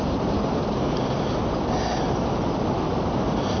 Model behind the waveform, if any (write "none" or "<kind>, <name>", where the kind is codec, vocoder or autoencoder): none